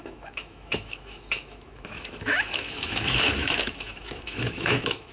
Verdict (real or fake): fake